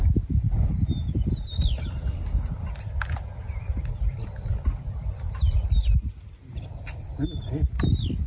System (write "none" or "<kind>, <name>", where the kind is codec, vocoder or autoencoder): none